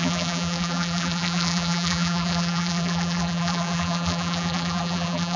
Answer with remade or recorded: remade